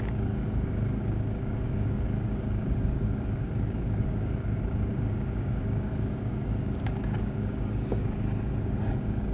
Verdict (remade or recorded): remade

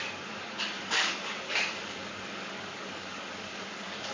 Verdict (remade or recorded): remade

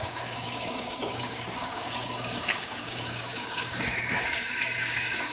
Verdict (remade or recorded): remade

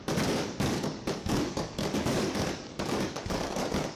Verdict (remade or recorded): remade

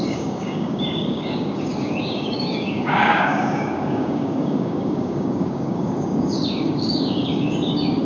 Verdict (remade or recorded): remade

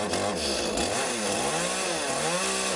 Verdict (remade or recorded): recorded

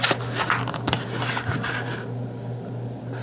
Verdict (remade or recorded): recorded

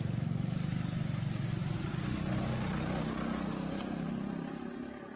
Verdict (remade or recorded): recorded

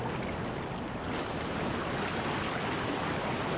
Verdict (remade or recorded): recorded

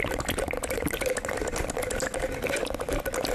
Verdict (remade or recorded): recorded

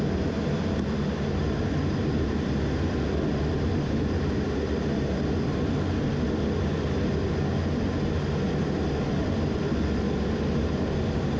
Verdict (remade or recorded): recorded